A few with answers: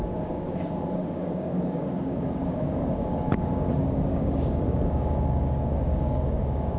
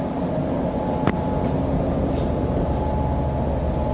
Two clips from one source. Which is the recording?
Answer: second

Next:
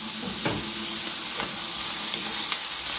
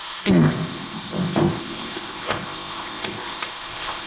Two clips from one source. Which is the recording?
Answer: first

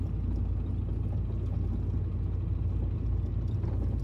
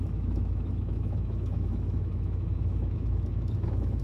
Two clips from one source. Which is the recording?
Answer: first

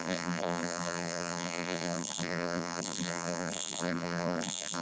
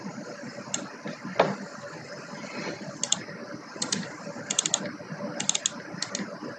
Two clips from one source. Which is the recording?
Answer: second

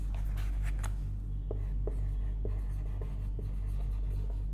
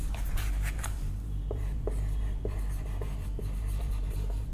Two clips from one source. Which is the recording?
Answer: first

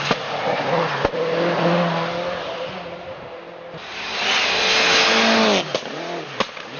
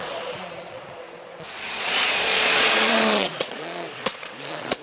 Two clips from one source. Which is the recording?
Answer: first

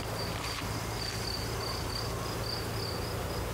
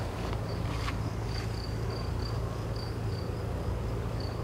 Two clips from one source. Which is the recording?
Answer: first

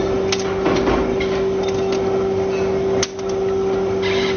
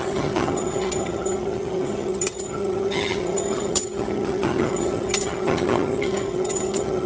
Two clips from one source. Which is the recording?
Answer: first